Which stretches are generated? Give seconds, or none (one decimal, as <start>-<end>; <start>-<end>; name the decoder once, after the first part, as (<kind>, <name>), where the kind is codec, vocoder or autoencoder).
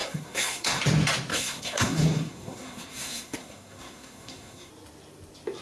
0.0-0.8 (codec, SNAC); 1.3-4.7